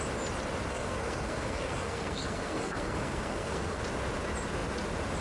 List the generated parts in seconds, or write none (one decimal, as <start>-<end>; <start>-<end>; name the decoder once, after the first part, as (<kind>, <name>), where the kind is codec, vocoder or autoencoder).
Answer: 0.7-3.8 (codec, SNAC)